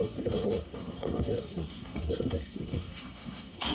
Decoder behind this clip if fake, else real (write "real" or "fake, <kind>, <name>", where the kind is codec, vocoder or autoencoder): fake, codec, SNAC